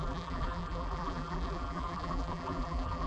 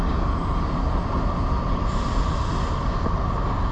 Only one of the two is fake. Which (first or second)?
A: first